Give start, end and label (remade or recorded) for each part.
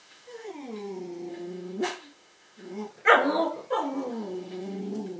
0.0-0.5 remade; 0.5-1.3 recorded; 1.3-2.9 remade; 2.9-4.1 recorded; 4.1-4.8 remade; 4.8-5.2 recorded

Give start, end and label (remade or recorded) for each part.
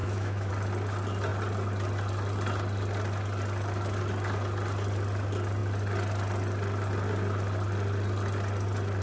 0.0-0.5 remade; 0.5-9.0 recorded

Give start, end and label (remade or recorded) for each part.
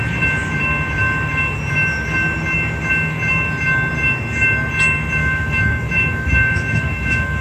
0.0-5.2 recorded; 5.2-7.4 remade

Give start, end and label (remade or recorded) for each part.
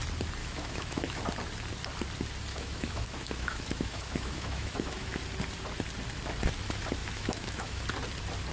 0.0-0.4 recorded; 0.4-1.2 remade; 1.2-2.5 recorded; 2.5-5.2 remade; 5.2-7.0 recorded; 7.0-7.8 remade; 7.8-8.5 recorded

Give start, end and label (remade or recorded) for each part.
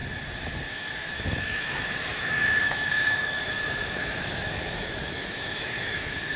0.0-0.7 recorded; 0.7-6.4 remade